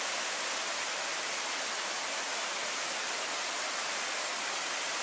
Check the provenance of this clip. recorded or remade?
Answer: recorded